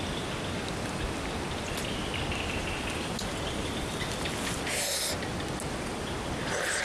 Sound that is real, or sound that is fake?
real